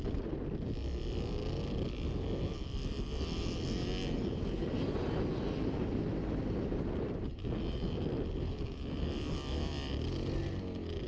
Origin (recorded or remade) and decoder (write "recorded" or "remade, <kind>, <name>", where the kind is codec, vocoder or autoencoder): recorded